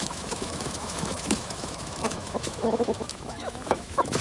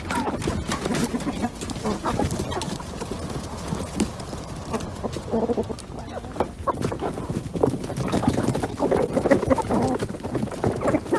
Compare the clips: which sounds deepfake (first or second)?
first